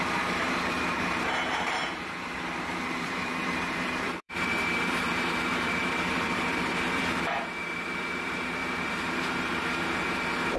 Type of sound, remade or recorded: remade